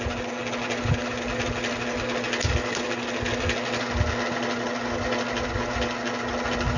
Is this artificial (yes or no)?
no